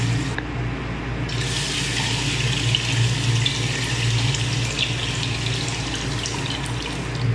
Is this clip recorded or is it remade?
recorded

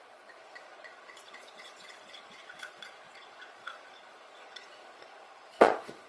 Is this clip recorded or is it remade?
remade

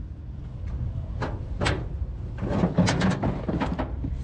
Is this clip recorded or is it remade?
recorded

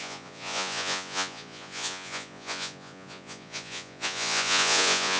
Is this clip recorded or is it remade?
remade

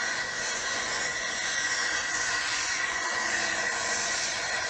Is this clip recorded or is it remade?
remade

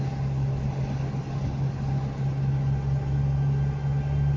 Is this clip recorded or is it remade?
recorded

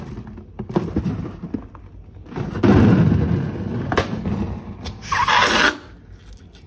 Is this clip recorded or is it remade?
recorded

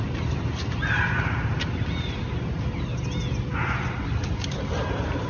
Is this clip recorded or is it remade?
recorded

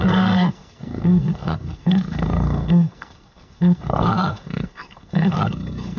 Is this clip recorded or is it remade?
remade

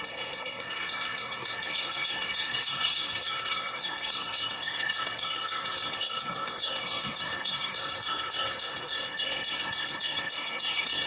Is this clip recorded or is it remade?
remade